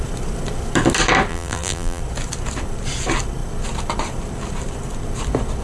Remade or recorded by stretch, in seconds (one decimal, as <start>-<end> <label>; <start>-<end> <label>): 0.0-1.3 recorded; 1.3-2.0 remade; 2.0-5.6 recorded